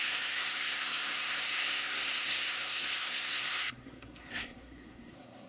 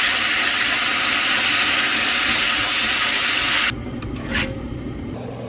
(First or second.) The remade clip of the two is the first